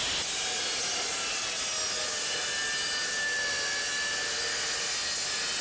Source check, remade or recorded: recorded